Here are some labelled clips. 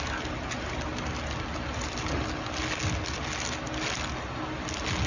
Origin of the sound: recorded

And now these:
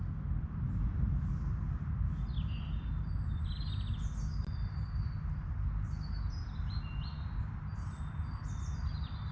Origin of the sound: recorded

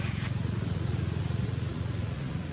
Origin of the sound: remade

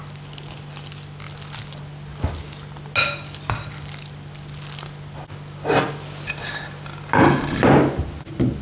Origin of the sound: recorded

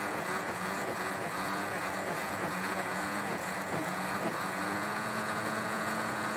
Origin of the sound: remade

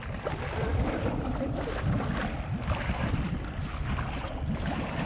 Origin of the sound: recorded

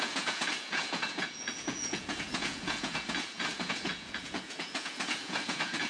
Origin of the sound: remade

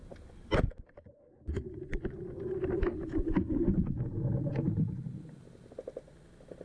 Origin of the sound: recorded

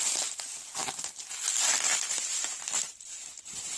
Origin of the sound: recorded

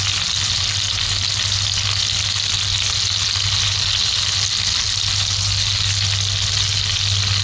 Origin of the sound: recorded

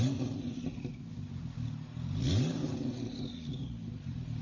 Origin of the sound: recorded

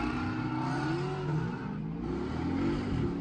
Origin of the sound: recorded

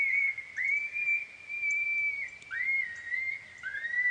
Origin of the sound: recorded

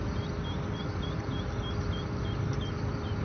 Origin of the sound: recorded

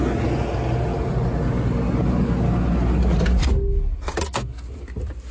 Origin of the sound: recorded